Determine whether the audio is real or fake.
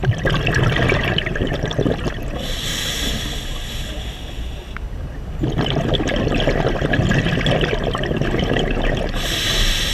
real